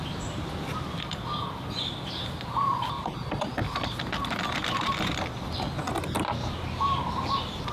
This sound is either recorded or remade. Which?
recorded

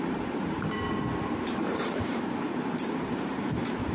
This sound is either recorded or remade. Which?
remade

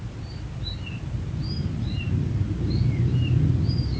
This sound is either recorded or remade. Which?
remade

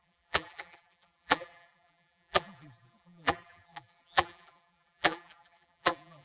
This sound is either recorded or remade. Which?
remade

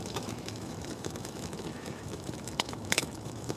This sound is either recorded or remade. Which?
remade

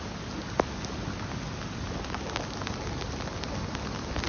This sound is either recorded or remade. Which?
recorded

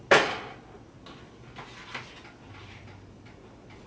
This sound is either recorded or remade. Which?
recorded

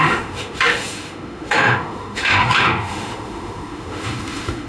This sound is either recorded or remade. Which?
remade